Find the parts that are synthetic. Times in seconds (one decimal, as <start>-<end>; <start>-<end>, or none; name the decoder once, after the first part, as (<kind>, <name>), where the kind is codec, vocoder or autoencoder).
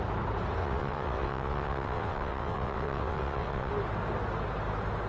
0.6-3.7 (vocoder, WaveNeXt)